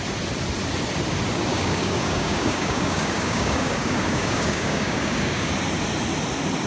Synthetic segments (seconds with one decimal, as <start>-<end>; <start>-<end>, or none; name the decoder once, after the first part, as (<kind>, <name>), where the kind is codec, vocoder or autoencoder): 1.5-5.5 (codec, DAC)